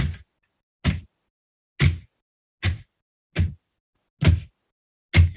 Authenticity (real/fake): real